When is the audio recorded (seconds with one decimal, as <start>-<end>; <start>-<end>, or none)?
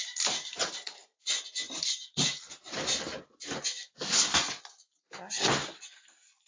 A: 0.0-6.5